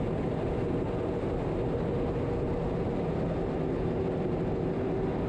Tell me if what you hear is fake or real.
real